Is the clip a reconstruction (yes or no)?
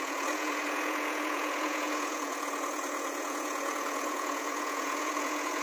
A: yes